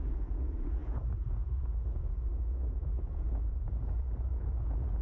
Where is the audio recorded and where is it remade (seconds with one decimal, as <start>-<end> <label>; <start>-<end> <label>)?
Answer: 0.0-5.0 remade